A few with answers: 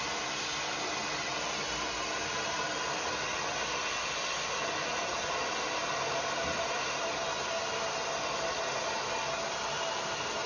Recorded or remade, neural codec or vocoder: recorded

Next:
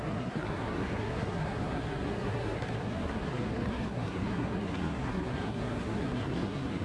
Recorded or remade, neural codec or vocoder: remade, codec, SNAC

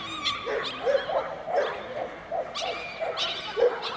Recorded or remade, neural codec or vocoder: recorded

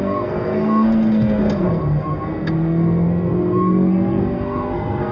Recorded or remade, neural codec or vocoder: remade, codec, SNAC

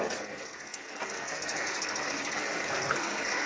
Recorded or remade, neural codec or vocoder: remade, codec, SNAC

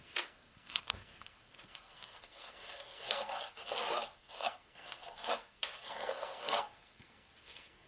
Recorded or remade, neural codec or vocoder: remade, codec, SNAC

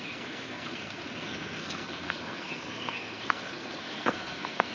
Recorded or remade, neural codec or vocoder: remade, codec, SNAC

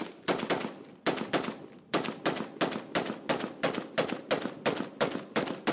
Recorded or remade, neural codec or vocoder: recorded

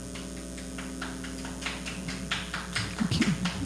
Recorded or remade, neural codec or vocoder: recorded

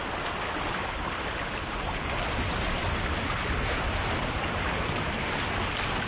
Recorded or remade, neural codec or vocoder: recorded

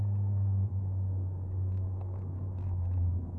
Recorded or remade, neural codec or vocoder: remade, codec, SNAC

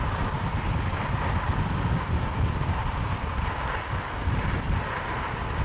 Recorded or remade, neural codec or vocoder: recorded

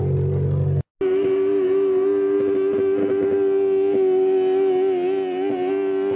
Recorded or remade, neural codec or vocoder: recorded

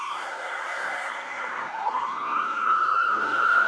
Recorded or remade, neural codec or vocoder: remade, codec, SNAC